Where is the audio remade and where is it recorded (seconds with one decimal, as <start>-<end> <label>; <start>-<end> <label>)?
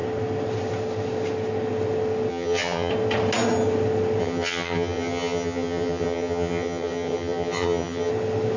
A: 0.0-2.3 recorded; 2.3-2.9 remade; 2.9-4.2 recorded; 4.2-8.1 remade; 8.1-8.6 recorded